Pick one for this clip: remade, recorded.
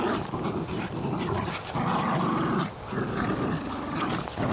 recorded